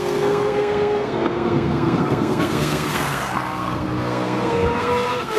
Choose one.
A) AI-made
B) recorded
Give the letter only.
A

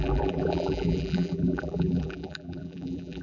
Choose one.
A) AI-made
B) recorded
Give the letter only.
A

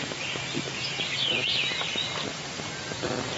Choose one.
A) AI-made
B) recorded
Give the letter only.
B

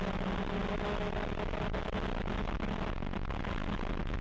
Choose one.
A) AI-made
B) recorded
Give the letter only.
B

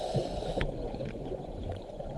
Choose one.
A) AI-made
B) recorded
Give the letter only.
A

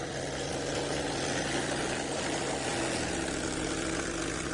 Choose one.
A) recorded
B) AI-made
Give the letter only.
A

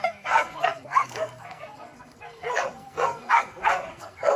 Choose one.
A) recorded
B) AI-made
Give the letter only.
B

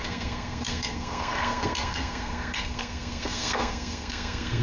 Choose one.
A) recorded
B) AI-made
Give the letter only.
B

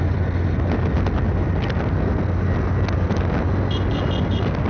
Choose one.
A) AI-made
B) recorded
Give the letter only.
B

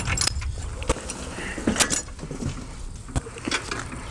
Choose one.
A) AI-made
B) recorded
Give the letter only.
B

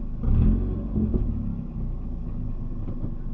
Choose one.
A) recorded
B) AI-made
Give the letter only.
A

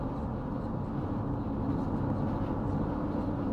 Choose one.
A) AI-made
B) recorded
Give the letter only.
B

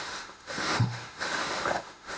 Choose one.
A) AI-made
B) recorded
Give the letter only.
A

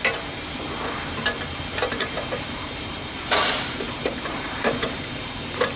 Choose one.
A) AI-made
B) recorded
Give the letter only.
A